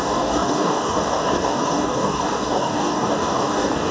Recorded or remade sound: remade